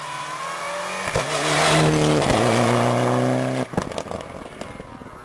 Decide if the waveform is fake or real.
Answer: real